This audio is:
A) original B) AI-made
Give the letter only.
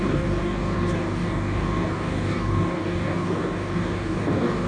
B